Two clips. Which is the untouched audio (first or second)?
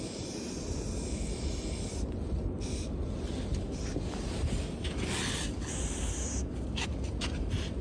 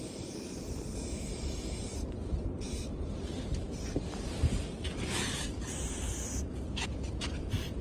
first